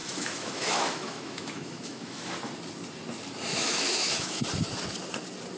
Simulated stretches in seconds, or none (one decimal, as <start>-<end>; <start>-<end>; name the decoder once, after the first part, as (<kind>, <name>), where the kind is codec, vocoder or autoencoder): 0.0-2.3 (autoencoder, DAC-VAE); 3.5-4.4